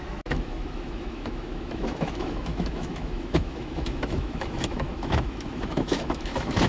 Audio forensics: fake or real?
fake